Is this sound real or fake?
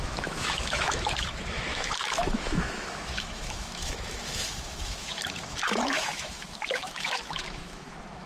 fake